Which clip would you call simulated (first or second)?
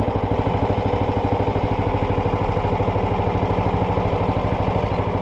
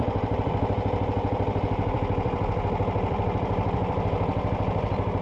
second